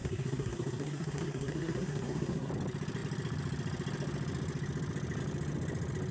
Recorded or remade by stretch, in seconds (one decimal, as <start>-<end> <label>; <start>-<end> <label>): 0.0-2.5 remade; 2.5-6.1 recorded